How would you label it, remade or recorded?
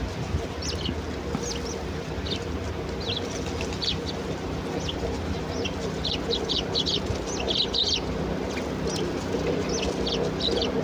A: recorded